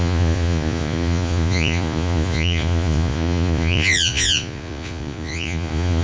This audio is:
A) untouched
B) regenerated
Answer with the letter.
B